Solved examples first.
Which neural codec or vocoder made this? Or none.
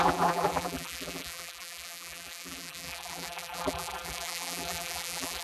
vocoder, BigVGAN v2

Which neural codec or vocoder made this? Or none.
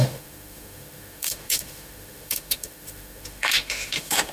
autoencoder, DAC-VAE